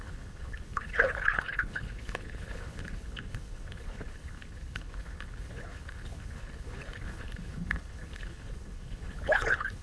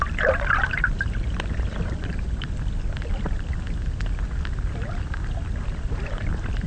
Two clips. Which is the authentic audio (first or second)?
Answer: second